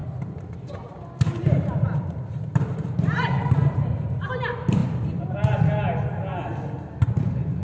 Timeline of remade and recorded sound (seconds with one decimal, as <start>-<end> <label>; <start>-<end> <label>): 0.0-4.3 remade; 4.3-4.8 recorded; 4.8-5.3 remade; 5.3-7.6 recorded